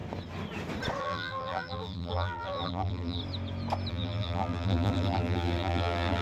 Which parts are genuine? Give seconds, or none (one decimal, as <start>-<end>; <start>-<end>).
0.0-1.0; 3.2-3.9